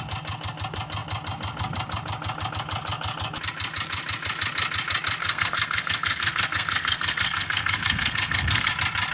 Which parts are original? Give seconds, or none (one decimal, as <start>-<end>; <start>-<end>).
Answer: 0.0-5.2; 8.7-9.1